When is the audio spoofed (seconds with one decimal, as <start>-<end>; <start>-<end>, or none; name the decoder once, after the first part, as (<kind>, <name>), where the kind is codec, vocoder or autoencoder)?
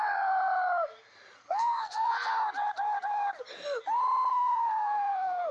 1.4-2.1 (codec, SNAC); 4.3-5.5